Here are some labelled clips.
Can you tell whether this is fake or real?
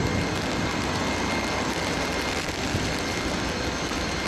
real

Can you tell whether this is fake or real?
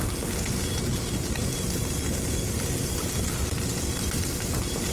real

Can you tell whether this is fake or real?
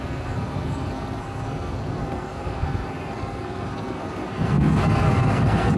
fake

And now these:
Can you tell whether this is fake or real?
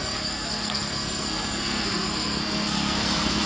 fake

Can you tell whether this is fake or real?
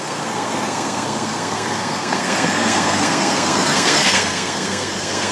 fake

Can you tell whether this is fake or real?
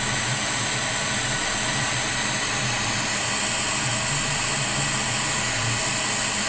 real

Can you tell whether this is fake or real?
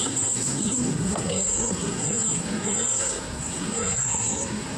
fake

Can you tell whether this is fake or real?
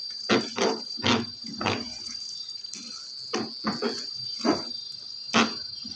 real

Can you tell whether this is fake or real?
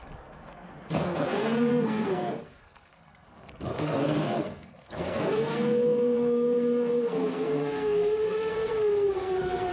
fake